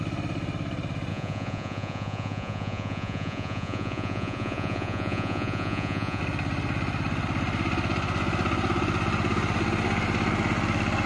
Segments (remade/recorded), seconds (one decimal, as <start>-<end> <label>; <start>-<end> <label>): 0.0-1.1 recorded; 1.1-6.2 remade; 6.2-11.1 recorded